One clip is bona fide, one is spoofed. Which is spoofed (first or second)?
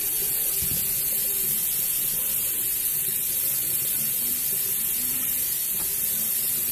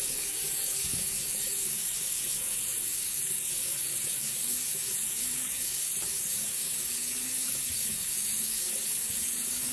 second